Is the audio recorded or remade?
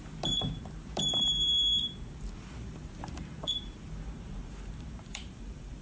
remade